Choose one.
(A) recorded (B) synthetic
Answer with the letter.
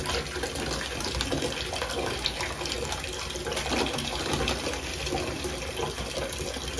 A